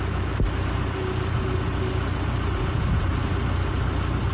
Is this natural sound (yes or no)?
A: yes